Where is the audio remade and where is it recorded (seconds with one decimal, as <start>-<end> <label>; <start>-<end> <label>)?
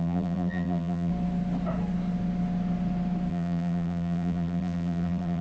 0.0-1.1 remade; 1.1-3.3 recorded; 3.3-5.4 remade